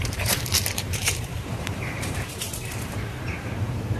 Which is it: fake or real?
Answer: fake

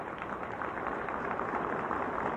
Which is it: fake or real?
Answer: fake